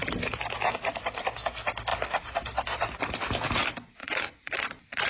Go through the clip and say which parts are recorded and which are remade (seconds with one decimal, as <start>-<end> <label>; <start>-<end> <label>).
0.0-4.0 recorded; 4.0-5.1 remade